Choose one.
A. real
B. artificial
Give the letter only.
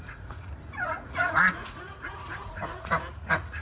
B